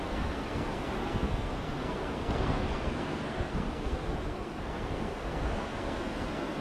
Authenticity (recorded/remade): remade